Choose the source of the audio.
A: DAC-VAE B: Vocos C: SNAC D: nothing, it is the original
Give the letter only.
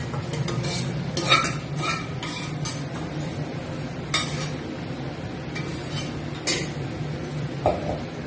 D